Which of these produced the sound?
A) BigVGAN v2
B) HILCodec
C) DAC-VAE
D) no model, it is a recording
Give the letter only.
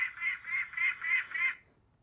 D